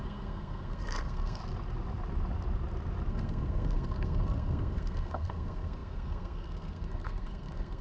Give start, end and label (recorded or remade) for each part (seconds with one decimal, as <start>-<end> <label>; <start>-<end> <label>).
0.0-1.4 remade; 1.4-3.1 recorded; 3.1-7.8 remade